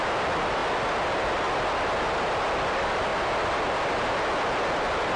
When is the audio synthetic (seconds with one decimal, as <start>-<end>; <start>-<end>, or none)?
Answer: none